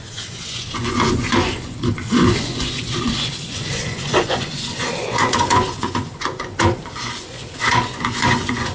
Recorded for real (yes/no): no